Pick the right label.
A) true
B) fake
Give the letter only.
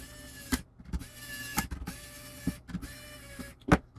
A